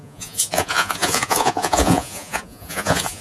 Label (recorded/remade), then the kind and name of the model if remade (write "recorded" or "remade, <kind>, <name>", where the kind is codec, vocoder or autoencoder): remade, vocoder, Vocos